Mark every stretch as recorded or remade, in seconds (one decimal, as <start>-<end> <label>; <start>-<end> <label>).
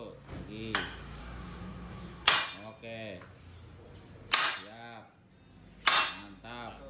0.0-1.2 recorded; 1.2-2.3 remade; 2.3-6.9 recorded